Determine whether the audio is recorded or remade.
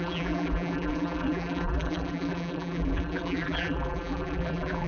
remade